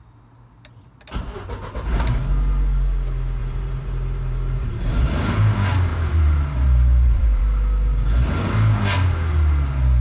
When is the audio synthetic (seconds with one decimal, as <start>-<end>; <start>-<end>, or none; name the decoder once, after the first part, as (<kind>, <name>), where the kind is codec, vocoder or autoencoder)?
3.4-5.4 (vocoder, BigVGAN v2); 5.9-7.4